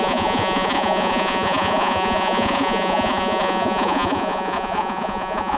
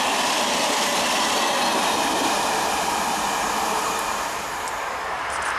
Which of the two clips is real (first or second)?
second